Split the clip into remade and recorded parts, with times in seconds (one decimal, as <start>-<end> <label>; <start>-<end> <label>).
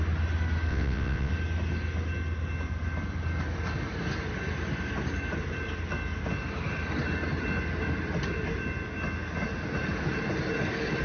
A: 0.0-0.7 recorded; 0.7-1.3 remade; 1.3-11.0 recorded